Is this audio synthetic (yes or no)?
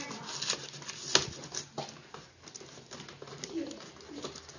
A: no